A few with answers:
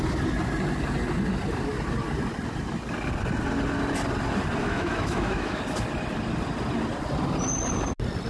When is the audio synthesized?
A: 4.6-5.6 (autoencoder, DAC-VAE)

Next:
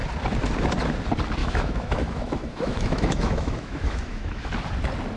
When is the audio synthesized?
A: 1.4-4.5 (autoencoder, DAC-VAE)

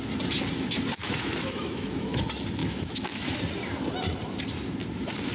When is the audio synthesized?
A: 1.0-2.2 (autoencoder, DAC-VAE); 2.6-3.4

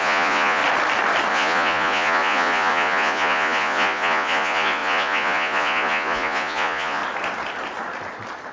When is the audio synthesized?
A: 0.0-0.6 (vocoder, Vocos); 1.3-7.0

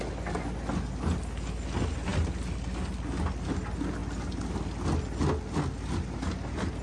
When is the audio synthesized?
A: none

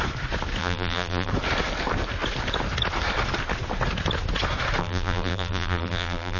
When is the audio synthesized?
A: 0.6-1.3 (vocoder, BigVGAN v2); 4.8-6.4

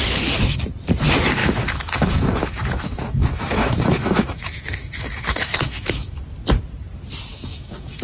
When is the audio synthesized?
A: 1.4-6.2 (autoencoder, DAC-VAE); 7.3-8.0